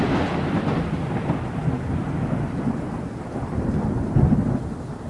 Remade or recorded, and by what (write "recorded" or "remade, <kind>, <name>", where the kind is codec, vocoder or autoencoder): recorded